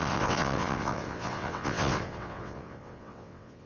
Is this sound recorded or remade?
remade